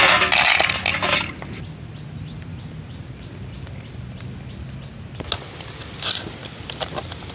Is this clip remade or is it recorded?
recorded